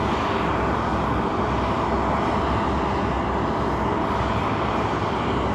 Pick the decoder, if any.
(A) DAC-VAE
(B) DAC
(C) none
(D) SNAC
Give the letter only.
C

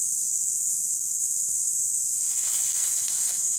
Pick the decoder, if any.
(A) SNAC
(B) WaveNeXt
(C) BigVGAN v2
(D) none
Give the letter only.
A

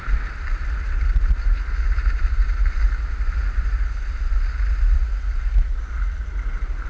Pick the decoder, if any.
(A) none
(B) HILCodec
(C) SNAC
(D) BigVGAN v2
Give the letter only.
A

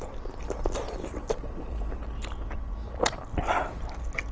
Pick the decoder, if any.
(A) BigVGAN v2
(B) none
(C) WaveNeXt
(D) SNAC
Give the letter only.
B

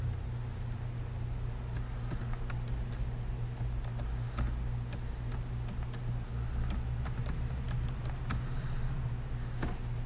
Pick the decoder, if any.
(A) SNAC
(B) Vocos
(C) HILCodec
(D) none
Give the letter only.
D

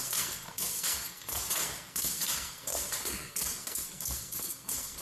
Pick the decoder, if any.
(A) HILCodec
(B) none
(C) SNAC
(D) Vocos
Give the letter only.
C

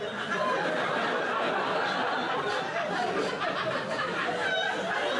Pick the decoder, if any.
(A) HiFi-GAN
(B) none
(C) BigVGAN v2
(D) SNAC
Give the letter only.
B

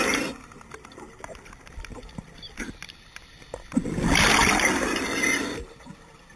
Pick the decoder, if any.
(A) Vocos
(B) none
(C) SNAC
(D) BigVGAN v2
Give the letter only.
B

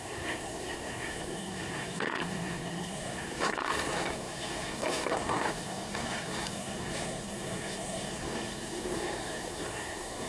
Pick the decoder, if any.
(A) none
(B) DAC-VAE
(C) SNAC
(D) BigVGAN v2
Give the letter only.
C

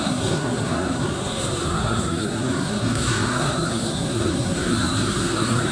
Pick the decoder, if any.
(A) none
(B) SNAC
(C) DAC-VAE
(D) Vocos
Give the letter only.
B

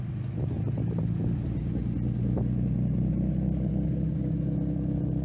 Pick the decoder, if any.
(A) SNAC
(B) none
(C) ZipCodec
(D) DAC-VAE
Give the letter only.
B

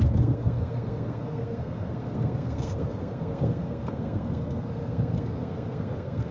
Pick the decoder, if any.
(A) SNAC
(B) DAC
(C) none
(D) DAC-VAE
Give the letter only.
A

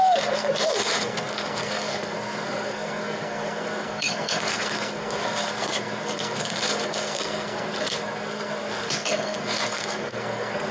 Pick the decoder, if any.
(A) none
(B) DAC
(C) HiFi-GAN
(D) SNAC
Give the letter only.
D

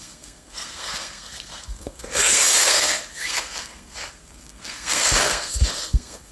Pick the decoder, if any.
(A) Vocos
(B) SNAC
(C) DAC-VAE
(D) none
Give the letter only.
B